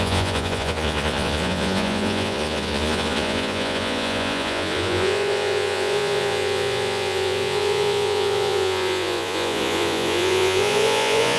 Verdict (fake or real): fake